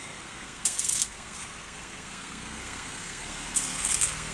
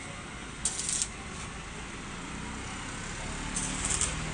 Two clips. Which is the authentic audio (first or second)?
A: second